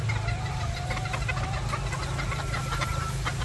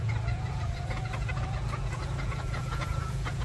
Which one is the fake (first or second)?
second